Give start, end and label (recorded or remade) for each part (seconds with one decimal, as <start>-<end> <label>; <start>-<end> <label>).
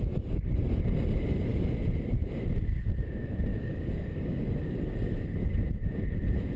0.0-3.5 recorded; 3.5-5.1 remade; 5.1-6.6 recorded